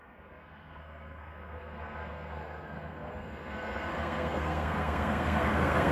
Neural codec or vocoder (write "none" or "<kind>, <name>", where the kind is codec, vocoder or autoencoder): codec, SNAC